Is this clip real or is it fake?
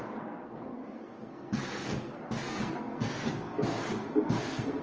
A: fake